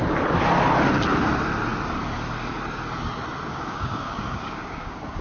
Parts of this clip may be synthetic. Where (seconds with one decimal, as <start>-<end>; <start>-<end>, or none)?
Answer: 3.5-5.2